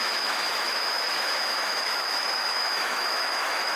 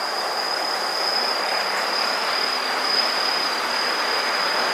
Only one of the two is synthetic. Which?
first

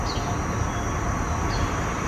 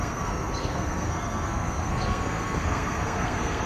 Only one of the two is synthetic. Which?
second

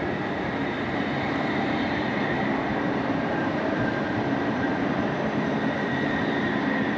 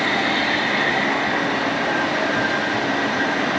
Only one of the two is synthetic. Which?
first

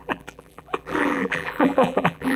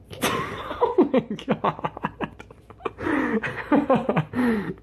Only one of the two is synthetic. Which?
first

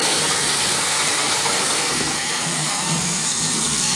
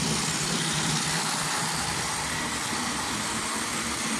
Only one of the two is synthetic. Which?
first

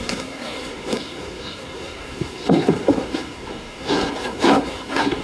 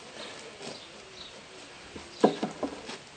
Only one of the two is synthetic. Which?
first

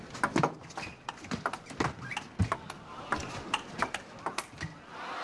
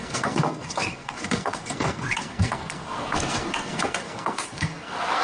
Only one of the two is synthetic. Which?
second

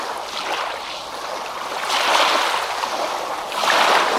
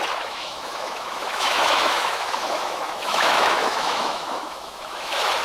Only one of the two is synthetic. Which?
second